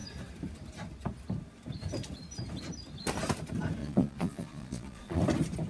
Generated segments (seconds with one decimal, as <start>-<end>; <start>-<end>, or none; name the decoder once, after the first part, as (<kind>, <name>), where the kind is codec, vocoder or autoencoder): 3.8-5.2 (vocoder, Vocos)